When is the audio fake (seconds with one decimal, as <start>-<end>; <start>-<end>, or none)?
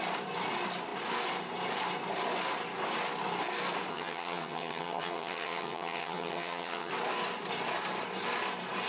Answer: 3.9-6.9